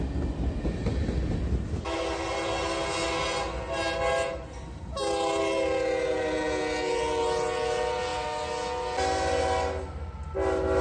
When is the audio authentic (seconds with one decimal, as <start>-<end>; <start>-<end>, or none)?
0.0-10.8